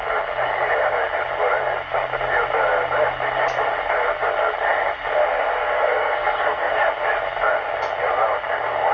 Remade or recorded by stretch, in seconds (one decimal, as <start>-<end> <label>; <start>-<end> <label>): 0.0-5.5 recorded; 5.5-6.7 remade; 6.7-8.9 recorded